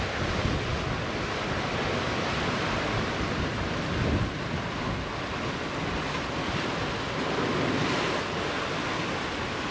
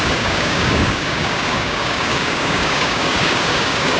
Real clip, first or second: first